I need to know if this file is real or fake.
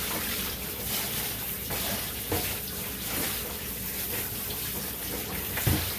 fake